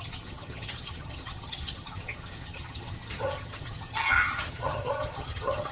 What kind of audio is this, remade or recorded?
remade